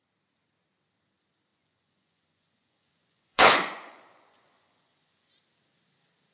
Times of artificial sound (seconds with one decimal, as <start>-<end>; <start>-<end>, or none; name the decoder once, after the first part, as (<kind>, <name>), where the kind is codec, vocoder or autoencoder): 1.5-5.3 (vocoder, Vocos)

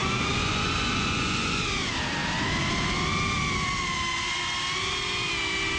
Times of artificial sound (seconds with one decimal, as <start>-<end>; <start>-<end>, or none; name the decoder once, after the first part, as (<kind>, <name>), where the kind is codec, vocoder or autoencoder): 0.0-1.6 (vocoder, Vocos)